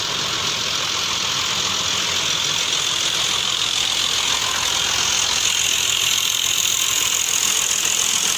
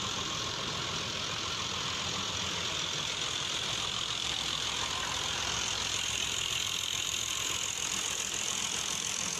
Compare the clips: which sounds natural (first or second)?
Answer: first